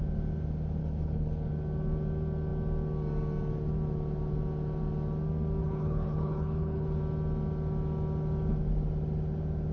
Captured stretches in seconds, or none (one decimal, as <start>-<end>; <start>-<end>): 0.0-0.8; 1.5-5.6; 7.0-9.7